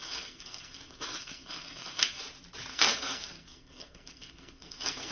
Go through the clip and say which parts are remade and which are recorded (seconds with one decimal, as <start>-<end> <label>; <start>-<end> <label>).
0.0-2.2 remade; 2.2-2.7 recorded; 2.7-5.1 remade